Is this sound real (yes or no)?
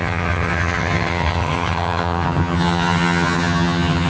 no